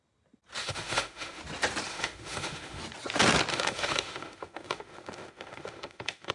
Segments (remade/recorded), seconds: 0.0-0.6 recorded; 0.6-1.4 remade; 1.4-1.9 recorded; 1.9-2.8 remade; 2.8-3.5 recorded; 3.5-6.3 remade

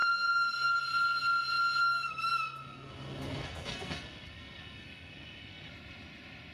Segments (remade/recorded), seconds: 0.0-0.8 remade; 0.8-1.8 recorded; 1.8-5.7 remade; 5.7-6.5 recorded

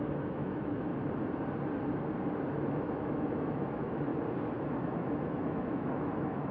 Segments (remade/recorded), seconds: 0.0-0.9 remade; 0.9-2.7 recorded; 2.7-4.1 remade; 4.1-4.8 recorded; 4.8-6.5 remade

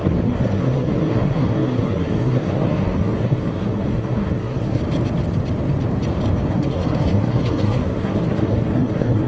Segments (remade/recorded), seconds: 0.0-4.8 remade; 4.8-6.5 recorded; 6.5-9.3 remade

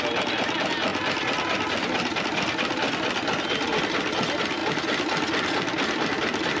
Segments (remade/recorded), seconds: 0.0-6.6 recorded

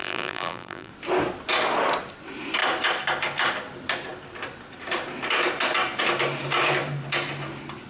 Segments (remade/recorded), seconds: 0.0-0.9 remade; 0.9-7.9 recorded